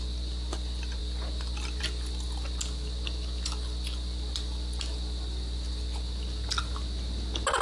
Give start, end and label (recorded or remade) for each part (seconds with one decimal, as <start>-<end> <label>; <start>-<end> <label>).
0.0-7.6 recorded